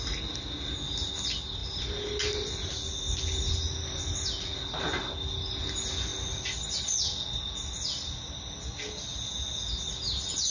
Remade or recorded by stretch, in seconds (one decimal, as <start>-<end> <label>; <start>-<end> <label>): 0.0-10.5 recorded